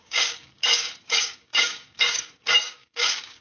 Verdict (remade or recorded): remade